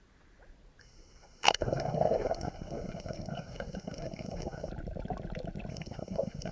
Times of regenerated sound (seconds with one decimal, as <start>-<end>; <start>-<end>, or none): 0.8-4.7; 5.7-6.5